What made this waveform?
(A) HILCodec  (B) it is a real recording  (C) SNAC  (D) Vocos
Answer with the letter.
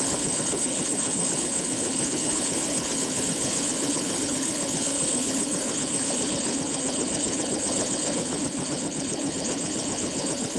A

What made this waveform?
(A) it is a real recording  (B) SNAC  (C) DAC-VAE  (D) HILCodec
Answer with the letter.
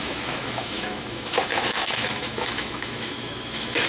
C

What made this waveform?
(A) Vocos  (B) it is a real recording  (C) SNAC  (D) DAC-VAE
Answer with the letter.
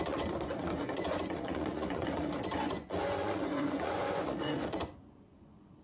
A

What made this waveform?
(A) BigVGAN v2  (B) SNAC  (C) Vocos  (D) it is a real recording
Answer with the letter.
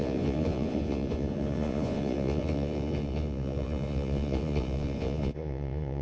C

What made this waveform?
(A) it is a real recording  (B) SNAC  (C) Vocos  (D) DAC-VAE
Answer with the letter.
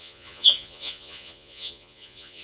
C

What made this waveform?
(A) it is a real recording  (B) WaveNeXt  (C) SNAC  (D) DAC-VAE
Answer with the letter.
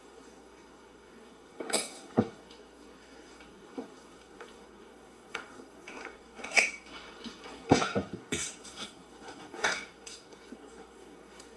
C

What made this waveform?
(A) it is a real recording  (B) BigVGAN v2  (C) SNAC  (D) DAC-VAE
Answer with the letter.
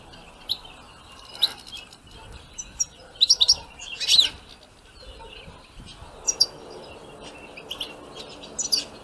A